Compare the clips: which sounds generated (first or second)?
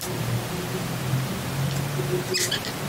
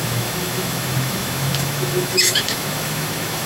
second